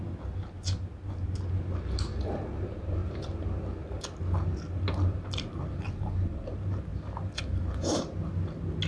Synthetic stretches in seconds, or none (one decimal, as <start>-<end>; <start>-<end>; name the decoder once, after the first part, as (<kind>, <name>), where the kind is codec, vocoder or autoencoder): 6.9-7.4 (vocoder, BigVGAN v2)